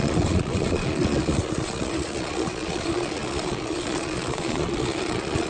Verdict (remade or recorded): remade